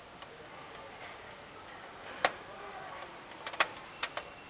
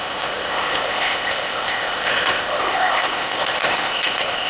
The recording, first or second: first